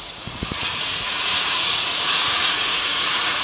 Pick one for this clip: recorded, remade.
remade